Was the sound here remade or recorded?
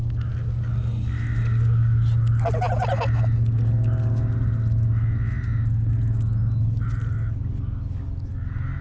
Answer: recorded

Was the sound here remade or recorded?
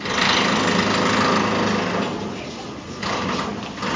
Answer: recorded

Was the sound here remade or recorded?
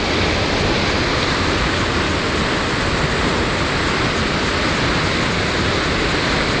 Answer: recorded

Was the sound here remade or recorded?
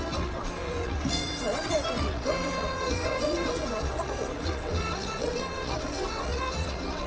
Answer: remade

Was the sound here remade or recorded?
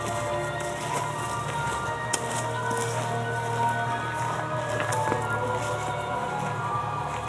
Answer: recorded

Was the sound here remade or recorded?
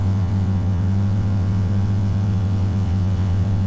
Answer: remade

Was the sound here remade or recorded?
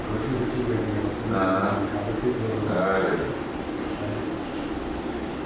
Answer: recorded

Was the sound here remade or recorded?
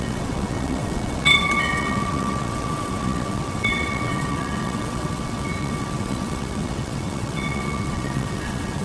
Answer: remade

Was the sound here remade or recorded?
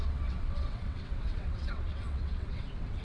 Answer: remade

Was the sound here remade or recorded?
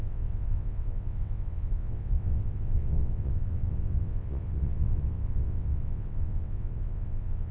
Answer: remade